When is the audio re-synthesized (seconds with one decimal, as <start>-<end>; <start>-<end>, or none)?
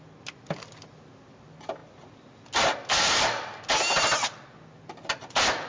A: none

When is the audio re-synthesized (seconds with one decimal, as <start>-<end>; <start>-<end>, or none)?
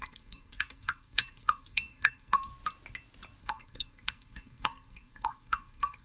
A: 0.0-2.5; 3.4-6.0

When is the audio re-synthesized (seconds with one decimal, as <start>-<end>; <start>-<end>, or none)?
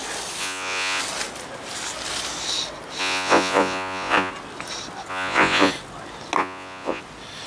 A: 0.4-1.0; 3.0-4.3; 5.1-5.7; 6.4-7.0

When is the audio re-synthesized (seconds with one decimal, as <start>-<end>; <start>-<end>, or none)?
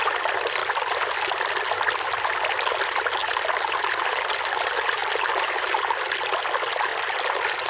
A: none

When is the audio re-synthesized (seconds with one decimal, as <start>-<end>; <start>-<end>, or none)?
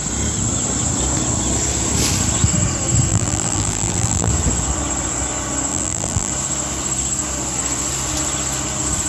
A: 3.1-4.3; 5.7-6.3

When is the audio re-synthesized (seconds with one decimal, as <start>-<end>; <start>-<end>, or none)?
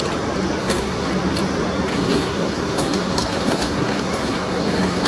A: 0.6-1.1; 1.9-5.1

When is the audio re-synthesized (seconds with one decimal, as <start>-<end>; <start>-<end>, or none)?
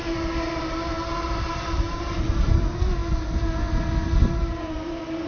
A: 0.0-2.5